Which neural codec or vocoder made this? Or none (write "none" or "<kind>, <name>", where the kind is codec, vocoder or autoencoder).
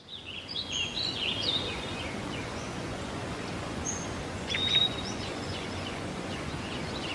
vocoder, Vocos